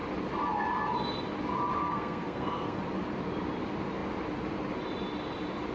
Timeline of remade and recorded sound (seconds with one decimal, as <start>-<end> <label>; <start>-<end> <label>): 0.0-1.8 recorded; 1.8-2.8 remade; 2.8-5.7 recorded